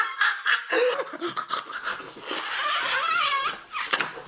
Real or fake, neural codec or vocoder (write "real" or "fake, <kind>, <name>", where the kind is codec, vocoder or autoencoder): real